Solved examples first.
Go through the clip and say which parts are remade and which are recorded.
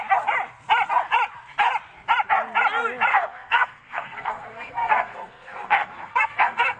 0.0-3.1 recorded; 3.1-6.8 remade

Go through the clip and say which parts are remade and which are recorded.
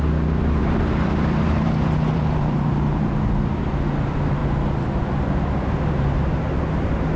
0.0-0.6 recorded; 0.6-3.6 remade; 3.6-7.2 recorded